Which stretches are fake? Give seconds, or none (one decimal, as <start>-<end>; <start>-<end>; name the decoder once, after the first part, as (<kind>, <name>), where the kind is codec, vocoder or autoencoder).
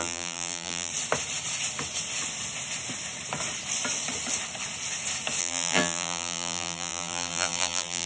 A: 0.0-0.9 (vocoder, BigVGAN v2); 5.4-8.1